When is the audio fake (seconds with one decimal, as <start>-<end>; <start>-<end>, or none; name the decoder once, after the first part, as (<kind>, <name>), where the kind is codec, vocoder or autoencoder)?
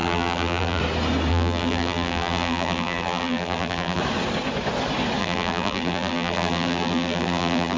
0.0-0.8 (vocoder, BigVGAN v2); 1.3-4.0; 5.2-7.8